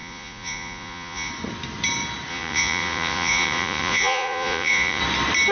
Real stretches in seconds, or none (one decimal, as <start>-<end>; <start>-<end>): 1.3-2.3; 5.0-5.5